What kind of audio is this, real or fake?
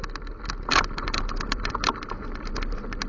real